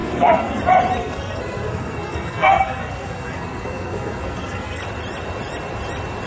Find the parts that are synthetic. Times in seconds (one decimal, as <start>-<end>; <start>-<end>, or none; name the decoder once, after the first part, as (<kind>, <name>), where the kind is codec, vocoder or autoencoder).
0.0-0.6 (codec, SNAC); 1.0-4.8